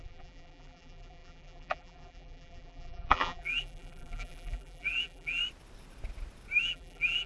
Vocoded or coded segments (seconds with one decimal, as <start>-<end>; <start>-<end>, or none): 0.0-5.4; 6.6-7.3